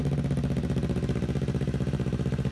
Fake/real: fake